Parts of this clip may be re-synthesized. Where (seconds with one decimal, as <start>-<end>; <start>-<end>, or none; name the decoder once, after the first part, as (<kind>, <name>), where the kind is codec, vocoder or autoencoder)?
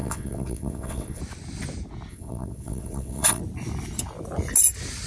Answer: 0.0-1.2 (vocoder, WaveNeXt); 2.1-3.4